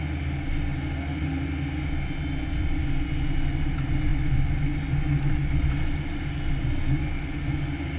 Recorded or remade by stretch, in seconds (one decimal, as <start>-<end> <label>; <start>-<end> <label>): 0.0-8.0 recorded